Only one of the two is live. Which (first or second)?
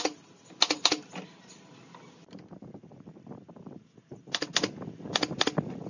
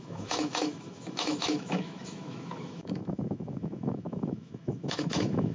first